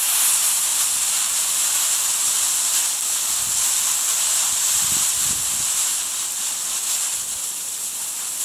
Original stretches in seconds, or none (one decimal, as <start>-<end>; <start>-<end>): 5.9-7.4